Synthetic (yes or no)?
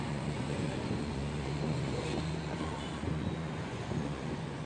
yes